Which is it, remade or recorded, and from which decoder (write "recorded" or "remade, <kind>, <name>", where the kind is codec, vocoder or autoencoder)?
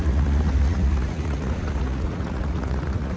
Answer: remade, vocoder, Vocos